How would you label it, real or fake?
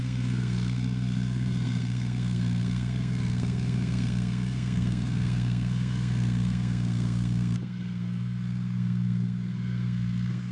fake